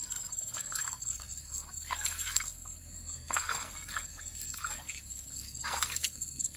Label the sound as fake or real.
fake